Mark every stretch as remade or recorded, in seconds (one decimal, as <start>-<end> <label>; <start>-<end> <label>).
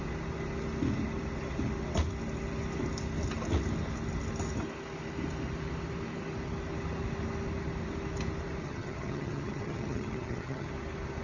0.0-8.6 recorded; 8.6-10.7 remade; 10.7-11.2 recorded